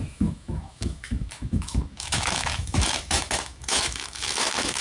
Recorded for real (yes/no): no